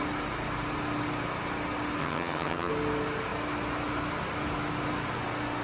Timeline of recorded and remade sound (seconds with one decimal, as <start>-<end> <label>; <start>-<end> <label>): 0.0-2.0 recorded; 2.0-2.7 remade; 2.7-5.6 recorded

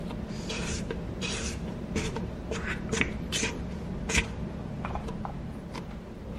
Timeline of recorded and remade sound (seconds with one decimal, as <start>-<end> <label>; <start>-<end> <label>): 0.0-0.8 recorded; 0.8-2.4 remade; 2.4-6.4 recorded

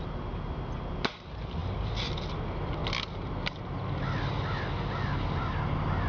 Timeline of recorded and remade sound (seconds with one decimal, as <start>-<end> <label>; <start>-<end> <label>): 0.0-6.1 recorded

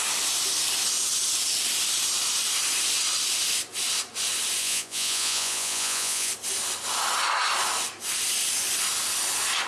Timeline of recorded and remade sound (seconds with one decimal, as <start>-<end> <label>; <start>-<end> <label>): 0.0-4.6 recorded; 4.6-6.3 remade; 6.3-9.7 recorded

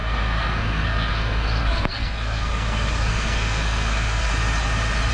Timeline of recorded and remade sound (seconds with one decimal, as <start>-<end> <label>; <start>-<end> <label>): 0.0-4.3 remade; 4.3-5.1 recorded

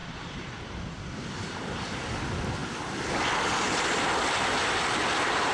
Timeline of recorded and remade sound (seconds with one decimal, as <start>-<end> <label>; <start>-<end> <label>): 0.0-0.8 remade; 0.8-5.5 recorded

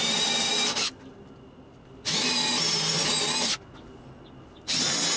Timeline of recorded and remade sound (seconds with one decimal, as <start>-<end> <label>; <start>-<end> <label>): 0.0-5.2 recorded

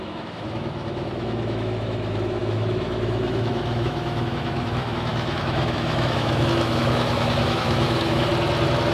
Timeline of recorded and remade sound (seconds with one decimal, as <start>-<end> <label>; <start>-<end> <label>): 0.0-8.3 remade; 8.3-8.9 recorded